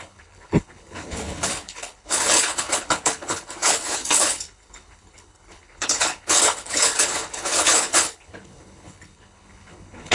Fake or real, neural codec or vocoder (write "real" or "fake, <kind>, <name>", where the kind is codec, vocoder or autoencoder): fake, codec, HILCodec